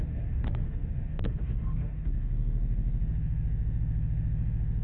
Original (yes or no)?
no